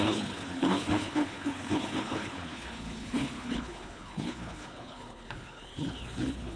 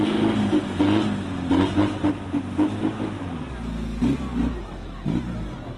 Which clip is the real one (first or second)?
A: second